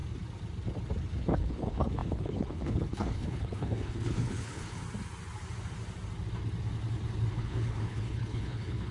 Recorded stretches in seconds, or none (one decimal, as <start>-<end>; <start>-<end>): 0.0-1.2; 4.8-7.3